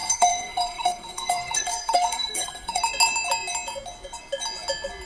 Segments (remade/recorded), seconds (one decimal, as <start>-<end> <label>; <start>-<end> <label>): 0.0-2.8 remade; 2.8-5.1 recorded